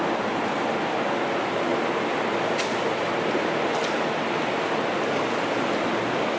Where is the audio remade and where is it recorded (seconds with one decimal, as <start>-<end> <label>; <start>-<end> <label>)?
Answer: 0.0-6.4 recorded